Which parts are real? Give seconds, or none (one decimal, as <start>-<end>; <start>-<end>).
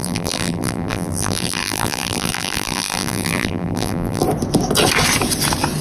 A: 4.2-5.8